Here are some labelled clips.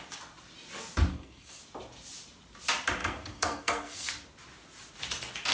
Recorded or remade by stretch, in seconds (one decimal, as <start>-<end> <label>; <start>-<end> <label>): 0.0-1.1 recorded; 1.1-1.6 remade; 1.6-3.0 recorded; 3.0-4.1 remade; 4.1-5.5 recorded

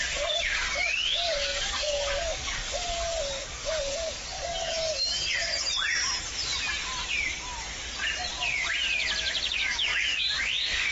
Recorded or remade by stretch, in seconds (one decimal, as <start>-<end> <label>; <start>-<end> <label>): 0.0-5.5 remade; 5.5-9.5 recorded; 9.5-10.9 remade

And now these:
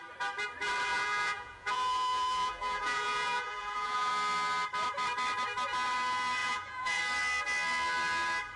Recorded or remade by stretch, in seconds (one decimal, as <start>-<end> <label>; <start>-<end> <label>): 0.0-0.9 recorded; 0.9-4.1 remade; 4.1-6.4 recorded; 6.4-7.0 remade; 7.0-8.6 recorded

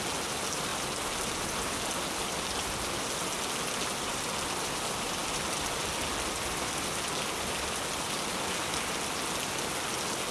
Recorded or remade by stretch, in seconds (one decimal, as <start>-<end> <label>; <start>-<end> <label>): 0.0-10.3 recorded

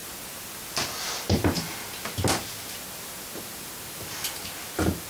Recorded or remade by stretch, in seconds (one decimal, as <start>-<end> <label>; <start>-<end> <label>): 0.0-5.1 recorded

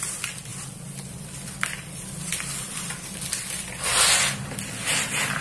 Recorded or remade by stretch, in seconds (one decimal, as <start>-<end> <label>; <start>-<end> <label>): 0.0-0.5 recorded; 0.5-3.7 remade; 3.7-5.4 recorded